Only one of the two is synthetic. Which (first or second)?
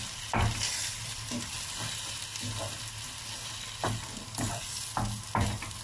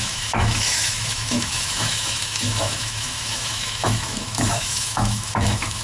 second